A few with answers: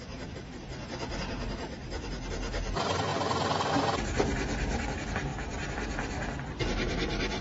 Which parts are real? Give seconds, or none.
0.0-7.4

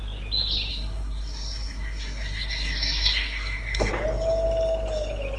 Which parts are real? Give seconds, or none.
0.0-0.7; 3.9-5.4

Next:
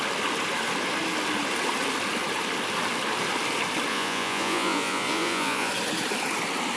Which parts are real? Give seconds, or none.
0.0-3.9; 5.7-6.8

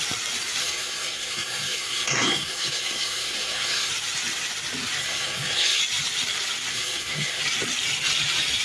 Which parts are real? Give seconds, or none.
0.0-0.6; 3.9-5.0; 5.8-6.7; 7.4-8.6

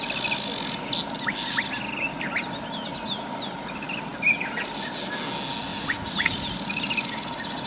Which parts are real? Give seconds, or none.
0.0-5.7; 6.3-7.7